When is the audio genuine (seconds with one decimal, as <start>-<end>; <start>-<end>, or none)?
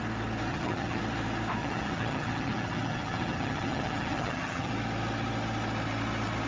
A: 0.0-0.5; 1.0-1.6; 4.7-6.5